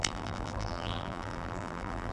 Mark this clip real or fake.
fake